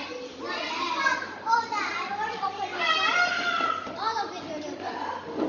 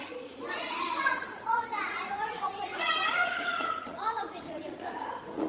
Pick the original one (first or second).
first